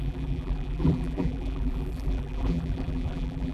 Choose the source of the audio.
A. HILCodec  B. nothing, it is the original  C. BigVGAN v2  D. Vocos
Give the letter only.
C